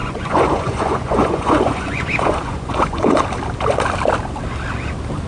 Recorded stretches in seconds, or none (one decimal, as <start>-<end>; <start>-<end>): 3.2-5.3